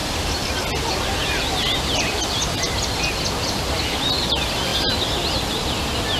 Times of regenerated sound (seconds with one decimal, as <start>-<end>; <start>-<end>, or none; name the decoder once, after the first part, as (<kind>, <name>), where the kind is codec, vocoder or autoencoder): none